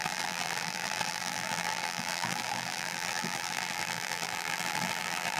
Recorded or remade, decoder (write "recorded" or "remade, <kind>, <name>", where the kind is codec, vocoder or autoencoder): remade, vocoder, BigVGAN v2